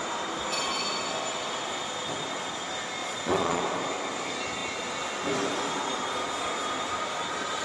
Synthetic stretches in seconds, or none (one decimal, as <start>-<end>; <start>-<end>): 3.0-3.6